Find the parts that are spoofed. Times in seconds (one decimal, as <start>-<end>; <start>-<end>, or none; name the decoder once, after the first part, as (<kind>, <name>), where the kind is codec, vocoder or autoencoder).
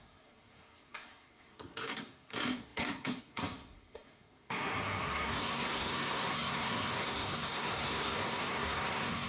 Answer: 0.0-9.3 (codec, SNAC)